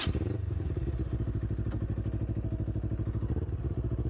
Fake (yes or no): no